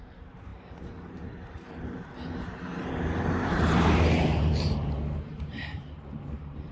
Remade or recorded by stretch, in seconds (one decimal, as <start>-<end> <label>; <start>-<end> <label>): 0.0-6.7 remade